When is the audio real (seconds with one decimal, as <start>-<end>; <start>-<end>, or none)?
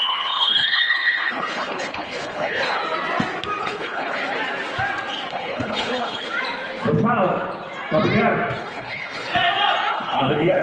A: 2.8-3.6; 4.2-5.3; 6.3-8.6; 9.3-9.9